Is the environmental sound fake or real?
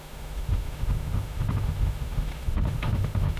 fake